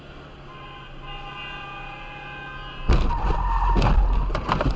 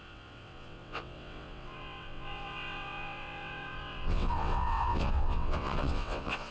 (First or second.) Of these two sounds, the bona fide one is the first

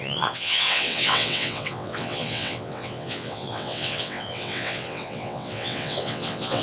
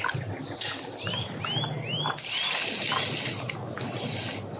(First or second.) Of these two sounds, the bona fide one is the second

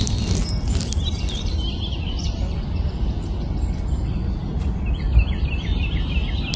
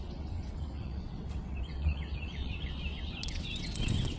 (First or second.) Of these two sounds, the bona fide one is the first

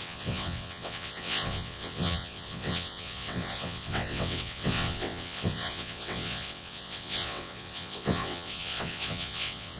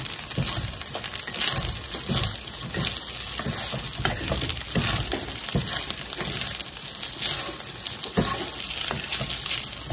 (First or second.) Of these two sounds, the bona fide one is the second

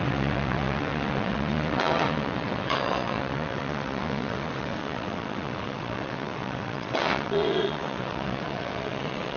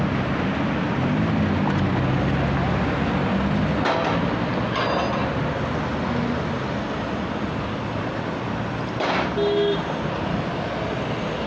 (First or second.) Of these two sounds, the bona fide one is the second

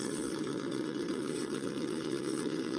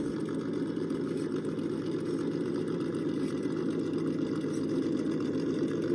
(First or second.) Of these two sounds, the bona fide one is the second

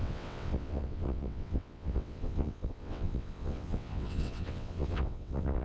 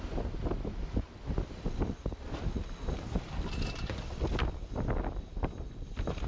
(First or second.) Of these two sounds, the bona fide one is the second